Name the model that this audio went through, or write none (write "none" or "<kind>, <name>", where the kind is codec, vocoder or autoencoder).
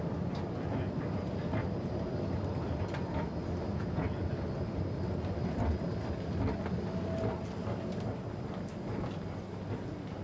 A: none